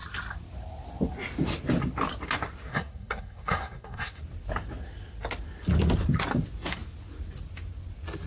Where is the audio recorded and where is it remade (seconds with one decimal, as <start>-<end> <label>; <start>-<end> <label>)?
0.0-2.7 recorded; 2.7-4.2 remade; 4.2-8.3 recorded